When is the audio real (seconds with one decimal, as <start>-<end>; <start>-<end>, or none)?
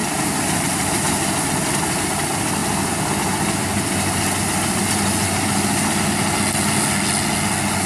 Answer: 0.0-7.9